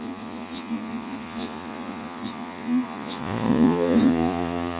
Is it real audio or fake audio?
fake